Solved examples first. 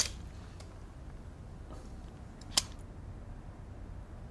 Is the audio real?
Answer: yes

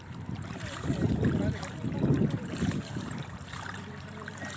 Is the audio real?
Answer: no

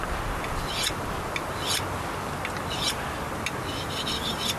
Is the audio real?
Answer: yes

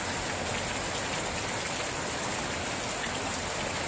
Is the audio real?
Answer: yes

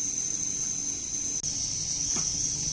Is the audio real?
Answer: yes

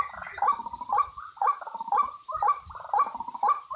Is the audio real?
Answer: no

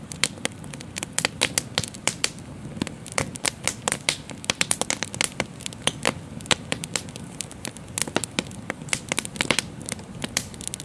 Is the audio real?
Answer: yes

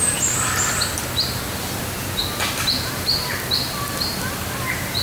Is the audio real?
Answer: no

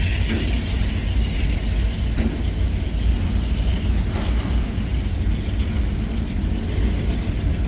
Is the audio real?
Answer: yes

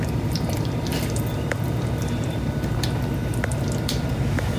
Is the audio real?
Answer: no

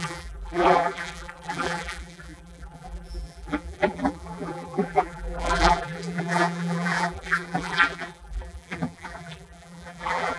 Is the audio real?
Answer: no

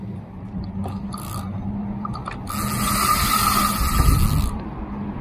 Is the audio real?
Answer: yes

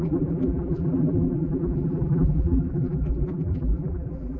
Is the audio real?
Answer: no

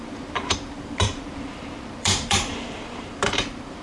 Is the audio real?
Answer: no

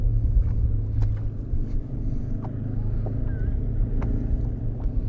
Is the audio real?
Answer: yes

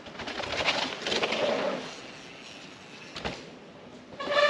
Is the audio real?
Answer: yes